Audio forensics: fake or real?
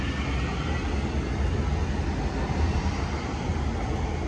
real